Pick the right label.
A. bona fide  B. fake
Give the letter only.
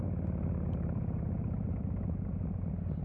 A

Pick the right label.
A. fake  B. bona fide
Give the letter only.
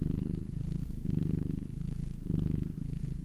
A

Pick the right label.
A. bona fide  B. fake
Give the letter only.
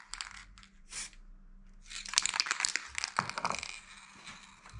A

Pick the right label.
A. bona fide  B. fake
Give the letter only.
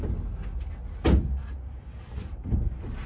A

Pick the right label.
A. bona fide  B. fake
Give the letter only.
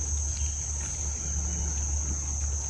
A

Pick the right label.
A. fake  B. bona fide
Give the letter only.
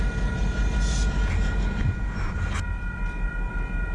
B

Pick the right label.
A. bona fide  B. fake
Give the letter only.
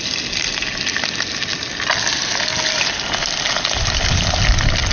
A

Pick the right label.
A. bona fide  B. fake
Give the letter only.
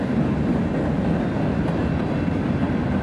A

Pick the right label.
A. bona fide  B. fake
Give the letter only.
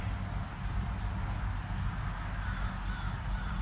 A